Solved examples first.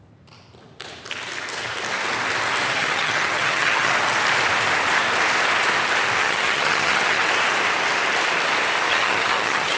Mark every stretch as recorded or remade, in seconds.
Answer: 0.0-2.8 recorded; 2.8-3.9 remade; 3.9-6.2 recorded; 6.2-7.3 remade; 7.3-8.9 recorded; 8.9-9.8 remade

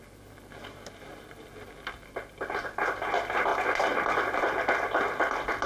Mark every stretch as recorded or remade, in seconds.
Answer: 0.0-5.7 recorded

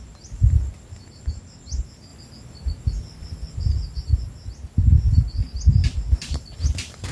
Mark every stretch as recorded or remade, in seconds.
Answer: 0.0-7.1 recorded

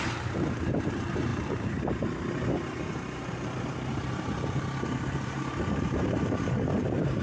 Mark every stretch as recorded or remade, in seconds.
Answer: 0.0-7.2 remade

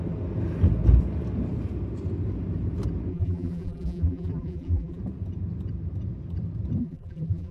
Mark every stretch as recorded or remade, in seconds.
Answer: 0.0-3.1 recorded; 3.1-5.0 remade; 5.0-6.8 recorded; 6.8-7.5 remade

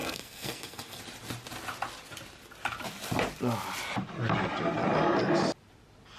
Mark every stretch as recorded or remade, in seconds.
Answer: 0.0-1.0 remade; 1.0-6.2 recorded

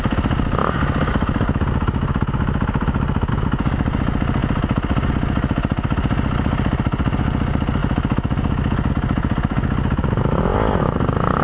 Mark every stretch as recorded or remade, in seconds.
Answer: 0.0-11.4 recorded